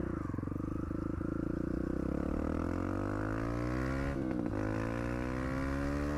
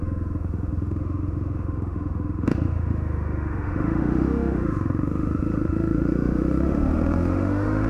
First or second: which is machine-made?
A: second